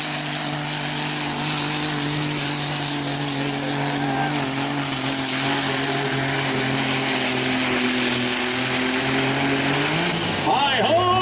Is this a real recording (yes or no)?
yes